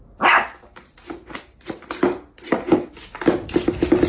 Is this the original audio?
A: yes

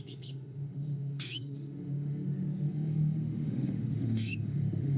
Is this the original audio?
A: no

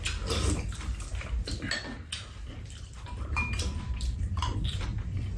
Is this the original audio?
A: yes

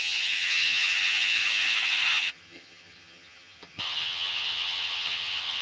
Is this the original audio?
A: no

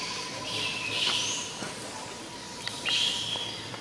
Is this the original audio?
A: yes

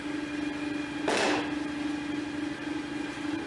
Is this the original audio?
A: yes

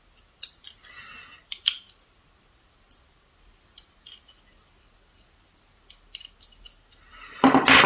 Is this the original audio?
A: yes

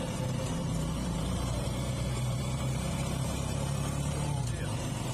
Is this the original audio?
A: no